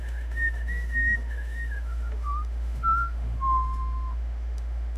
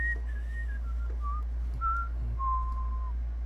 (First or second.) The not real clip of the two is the first